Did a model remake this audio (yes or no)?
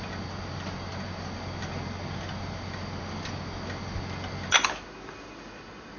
no